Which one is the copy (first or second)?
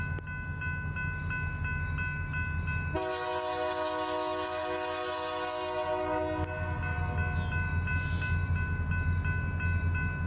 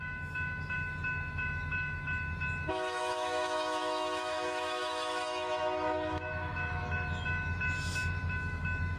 second